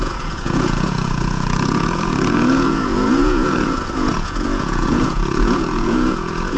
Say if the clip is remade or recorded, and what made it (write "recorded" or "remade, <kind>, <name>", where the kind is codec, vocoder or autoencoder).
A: remade, vocoder, Vocos